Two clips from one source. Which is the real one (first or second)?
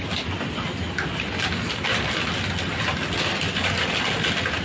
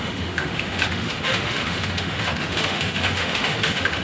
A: first